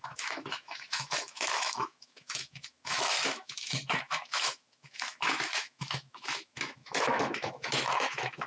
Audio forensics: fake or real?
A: fake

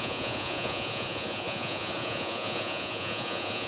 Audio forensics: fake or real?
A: fake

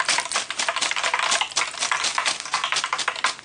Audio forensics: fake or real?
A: real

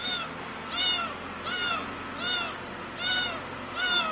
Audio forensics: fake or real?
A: real